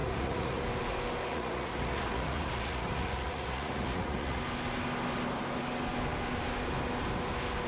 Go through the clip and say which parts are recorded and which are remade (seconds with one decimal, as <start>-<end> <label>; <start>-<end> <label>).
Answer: 0.0-0.6 remade; 0.6-1.3 recorded; 1.3-4.4 remade; 4.4-7.7 recorded

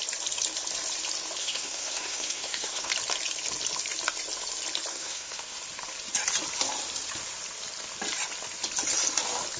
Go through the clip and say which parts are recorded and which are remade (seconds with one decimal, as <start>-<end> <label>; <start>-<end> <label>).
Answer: 0.0-1.4 recorded; 1.4-2.9 remade; 2.9-4.9 recorded; 4.9-5.6 remade; 5.6-9.6 recorded

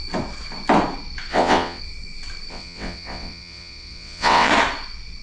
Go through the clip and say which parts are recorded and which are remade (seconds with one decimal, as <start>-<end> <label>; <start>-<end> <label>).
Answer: 0.0-1.3 recorded; 1.3-1.8 remade; 1.8-2.5 recorded; 2.5-4.5 remade; 4.5-5.2 recorded

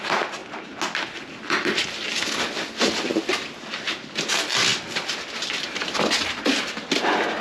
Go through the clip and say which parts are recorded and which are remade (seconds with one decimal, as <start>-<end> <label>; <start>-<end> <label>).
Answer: 0.0-7.4 recorded

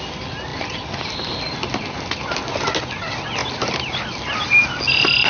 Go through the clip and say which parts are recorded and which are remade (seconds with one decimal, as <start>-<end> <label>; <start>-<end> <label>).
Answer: 0.0-0.5 recorded; 0.5-2.2 remade; 2.2-5.3 recorded